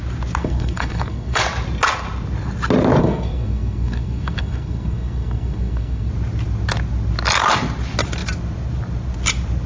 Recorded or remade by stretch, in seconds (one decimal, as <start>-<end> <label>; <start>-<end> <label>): 0.0-0.4 recorded; 0.4-1.4 remade; 1.4-3.0 recorded; 3.0-6.1 remade; 6.1-9.7 recorded